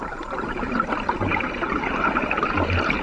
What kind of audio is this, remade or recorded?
recorded